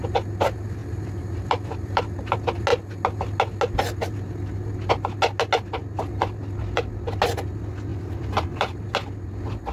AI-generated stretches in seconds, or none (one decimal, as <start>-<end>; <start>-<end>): 0.8-2.0; 7.9-8.8